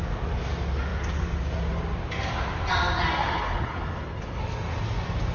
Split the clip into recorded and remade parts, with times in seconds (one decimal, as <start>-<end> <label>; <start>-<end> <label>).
0.0-3.2 recorded; 3.2-4.4 remade; 4.4-5.3 recorded